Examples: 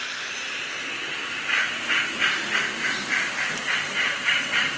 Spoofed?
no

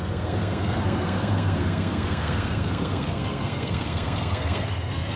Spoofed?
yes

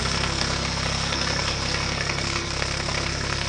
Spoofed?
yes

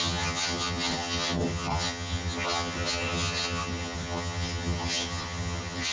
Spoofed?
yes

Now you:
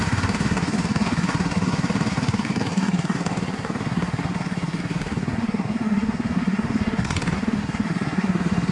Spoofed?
yes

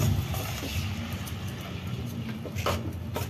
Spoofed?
no